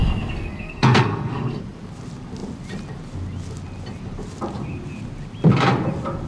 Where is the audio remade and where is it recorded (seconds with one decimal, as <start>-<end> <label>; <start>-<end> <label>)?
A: 0.0-1.6 remade; 1.6-6.3 recorded